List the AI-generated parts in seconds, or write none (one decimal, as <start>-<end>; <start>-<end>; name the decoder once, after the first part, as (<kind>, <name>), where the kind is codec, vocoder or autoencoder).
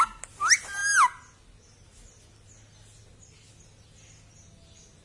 none